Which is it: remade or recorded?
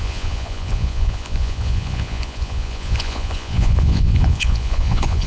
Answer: remade